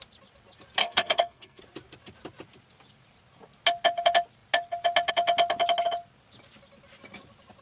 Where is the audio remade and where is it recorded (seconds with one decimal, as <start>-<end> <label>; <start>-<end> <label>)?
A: 0.0-0.8 recorded; 0.8-1.6 remade; 1.6-7.6 recorded